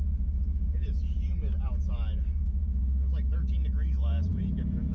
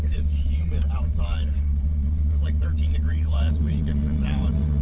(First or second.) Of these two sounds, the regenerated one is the second